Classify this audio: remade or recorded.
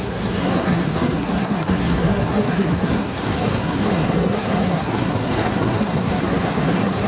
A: remade